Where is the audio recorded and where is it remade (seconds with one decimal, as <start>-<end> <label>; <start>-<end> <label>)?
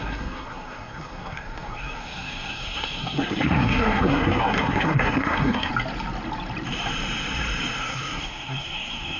0.0-5.7 remade; 5.7-7.8 recorded; 7.8-9.2 remade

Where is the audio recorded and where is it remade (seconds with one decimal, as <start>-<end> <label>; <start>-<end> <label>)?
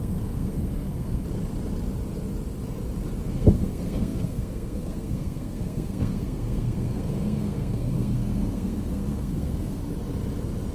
0.0-1.2 remade; 1.2-3.3 recorded; 3.3-9.8 remade; 9.8-10.7 recorded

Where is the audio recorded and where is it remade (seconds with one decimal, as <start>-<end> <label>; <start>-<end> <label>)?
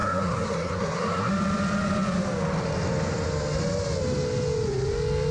0.0-1.3 remade; 1.3-5.3 recorded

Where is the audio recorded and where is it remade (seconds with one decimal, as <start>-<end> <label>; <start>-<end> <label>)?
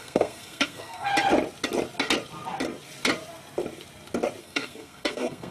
0.0-1.1 remade; 1.1-4.4 recorded; 4.4-5.5 remade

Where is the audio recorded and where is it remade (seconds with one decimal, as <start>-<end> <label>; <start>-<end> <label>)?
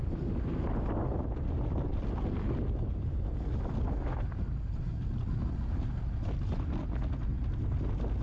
0.0-8.2 recorded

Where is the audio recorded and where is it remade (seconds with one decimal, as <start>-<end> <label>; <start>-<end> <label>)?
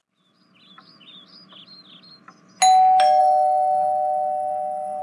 0.0-3.2 recorded; 3.2-5.0 remade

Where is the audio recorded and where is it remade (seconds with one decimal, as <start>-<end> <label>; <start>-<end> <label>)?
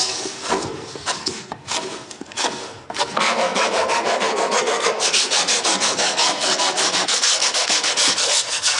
0.0-8.8 remade